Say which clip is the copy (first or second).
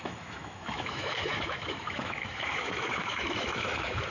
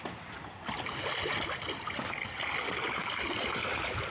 first